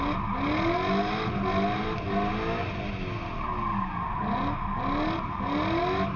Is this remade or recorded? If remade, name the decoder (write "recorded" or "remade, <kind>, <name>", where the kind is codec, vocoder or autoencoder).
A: recorded